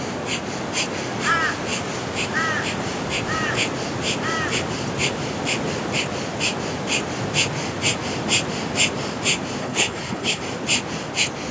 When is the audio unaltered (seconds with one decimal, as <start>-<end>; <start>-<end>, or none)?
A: 0.0-9.6; 10.4-11.5